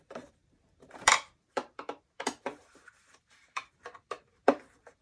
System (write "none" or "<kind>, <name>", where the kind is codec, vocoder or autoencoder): vocoder, BigVGAN v2